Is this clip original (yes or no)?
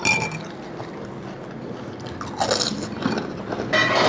yes